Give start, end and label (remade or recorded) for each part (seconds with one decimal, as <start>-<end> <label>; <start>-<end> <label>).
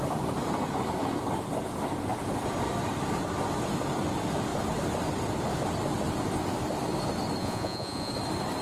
0.0-7.4 recorded; 7.4-8.1 remade; 8.1-8.6 recorded